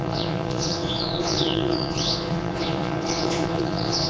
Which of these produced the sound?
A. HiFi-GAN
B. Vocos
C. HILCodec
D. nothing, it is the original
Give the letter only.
B